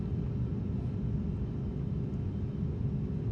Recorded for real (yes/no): yes